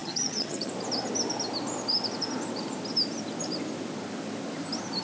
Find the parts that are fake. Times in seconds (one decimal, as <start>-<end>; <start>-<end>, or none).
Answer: 0.0-0.7